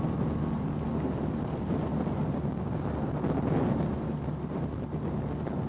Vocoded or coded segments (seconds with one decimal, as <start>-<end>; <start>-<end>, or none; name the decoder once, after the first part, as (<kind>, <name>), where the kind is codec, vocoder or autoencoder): none

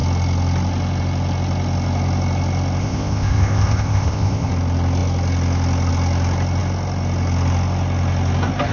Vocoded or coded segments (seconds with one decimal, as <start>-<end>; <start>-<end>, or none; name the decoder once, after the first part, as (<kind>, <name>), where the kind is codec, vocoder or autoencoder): 2.8-4.5 (codec, ZipCodec)

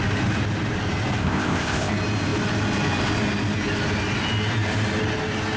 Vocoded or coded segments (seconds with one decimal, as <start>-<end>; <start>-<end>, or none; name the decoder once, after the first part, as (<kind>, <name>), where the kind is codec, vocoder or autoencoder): 1.2-1.9 (codec, ZipCodec)

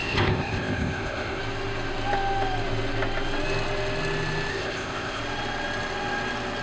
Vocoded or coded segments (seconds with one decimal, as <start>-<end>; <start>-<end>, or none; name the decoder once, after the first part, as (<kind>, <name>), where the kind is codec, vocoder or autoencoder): 0.0-1.4 (codec, ZipCodec); 4.5-5.2

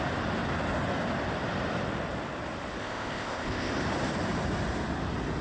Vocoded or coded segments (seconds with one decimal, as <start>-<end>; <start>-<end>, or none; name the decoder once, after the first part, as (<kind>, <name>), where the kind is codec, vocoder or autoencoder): 2.8-3.7 (codec, ZipCodec)

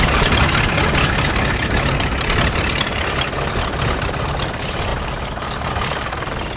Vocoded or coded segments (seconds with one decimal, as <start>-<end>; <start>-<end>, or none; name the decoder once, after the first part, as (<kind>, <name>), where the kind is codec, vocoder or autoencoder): none

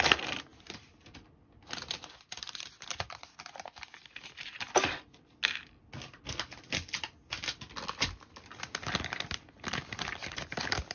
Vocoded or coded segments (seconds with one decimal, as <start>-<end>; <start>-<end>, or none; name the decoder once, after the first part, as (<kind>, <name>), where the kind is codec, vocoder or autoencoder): none